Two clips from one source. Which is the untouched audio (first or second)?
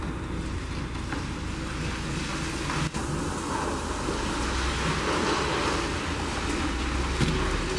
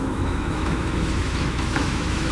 first